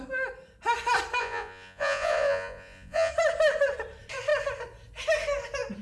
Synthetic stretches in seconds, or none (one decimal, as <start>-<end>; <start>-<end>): 1.2-3.1